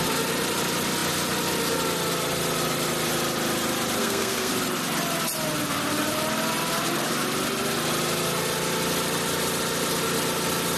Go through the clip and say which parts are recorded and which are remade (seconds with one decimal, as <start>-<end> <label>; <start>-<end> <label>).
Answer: 0.0-4.0 recorded; 4.0-4.5 remade; 4.5-10.8 recorded